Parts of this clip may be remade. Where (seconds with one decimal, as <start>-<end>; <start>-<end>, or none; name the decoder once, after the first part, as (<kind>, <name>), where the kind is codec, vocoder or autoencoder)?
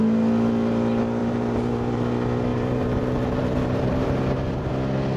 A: 1.2-2.0 (vocoder, BigVGAN v2); 2.5-4.7